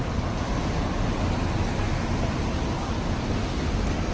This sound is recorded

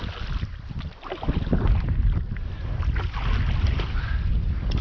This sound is recorded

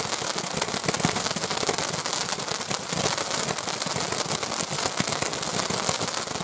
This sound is recorded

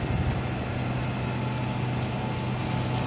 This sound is recorded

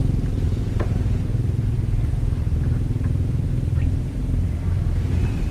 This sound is remade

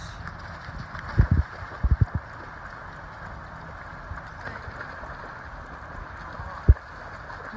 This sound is recorded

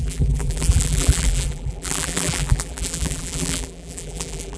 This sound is remade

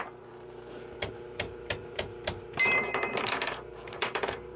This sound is remade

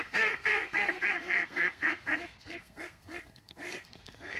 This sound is remade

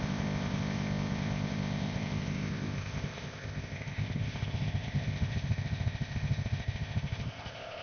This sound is remade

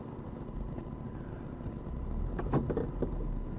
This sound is recorded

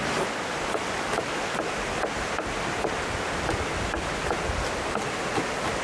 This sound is recorded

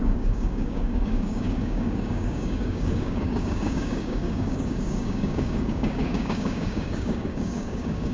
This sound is remade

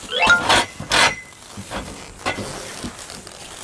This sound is recorded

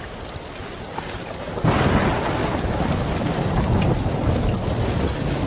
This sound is recorded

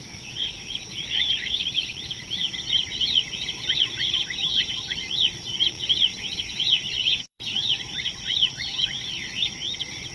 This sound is remade